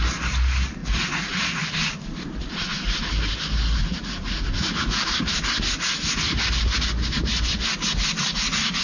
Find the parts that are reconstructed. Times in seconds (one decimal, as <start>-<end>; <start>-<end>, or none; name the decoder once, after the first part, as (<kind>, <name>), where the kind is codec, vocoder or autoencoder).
0.8-1.6 (vocoder, Vocos); 2.5-3.1; 3.8-5.3